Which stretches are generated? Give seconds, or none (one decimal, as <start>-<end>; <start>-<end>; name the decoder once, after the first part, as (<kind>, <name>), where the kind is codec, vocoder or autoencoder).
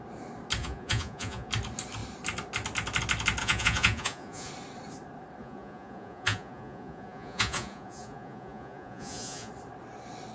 0.6-1.5 (vocoder, Vocos); 3.4-4.5; 5.4-9.5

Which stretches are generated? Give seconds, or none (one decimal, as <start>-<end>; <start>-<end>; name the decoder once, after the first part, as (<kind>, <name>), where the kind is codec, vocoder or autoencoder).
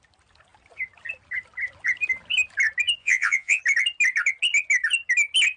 3.0-3.6 (vocoder, Vocos)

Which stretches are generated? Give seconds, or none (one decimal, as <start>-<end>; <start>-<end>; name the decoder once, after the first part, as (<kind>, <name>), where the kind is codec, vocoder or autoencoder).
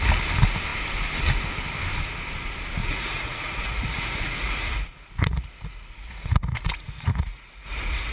2.8-8.1 (vocoder, Vocos)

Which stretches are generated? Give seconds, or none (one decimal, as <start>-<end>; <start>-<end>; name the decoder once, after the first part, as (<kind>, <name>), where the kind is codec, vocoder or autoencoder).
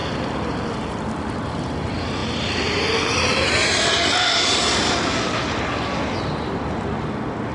none